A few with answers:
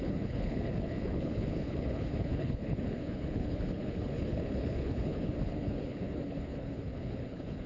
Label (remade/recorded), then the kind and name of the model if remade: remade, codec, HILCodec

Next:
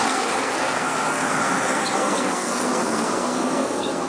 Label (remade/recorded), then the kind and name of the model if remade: remade, codec, SNAC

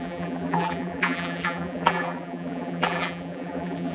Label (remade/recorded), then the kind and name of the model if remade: remade, vocoder, BigVGAN v2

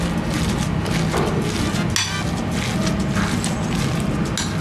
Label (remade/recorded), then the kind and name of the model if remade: recorded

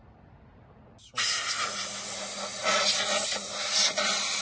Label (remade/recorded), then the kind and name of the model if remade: recorded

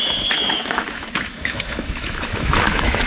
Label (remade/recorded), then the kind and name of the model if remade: remade, autoencoder, DAC-VAE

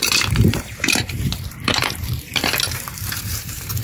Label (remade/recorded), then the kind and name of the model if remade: remade, vocoder, BigVGAN v2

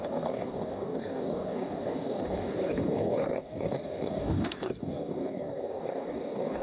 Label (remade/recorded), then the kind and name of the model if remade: remade, codec, DAC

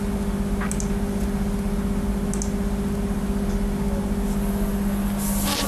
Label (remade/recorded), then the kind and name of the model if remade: recorded